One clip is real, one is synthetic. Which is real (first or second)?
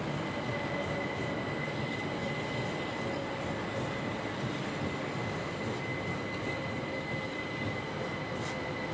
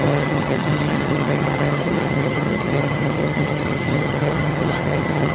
first